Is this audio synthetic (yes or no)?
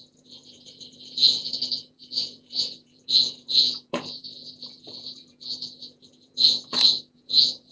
yes